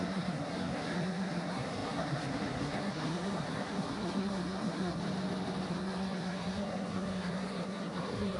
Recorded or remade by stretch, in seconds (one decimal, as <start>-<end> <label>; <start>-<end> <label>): 0.0-5.0 remade; 5.0-5.7 recorded; 5.7-8.4 remade